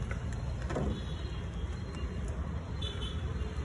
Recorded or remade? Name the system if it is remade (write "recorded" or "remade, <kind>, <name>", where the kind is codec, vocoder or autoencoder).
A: remade, vocoder, BigVGAN v2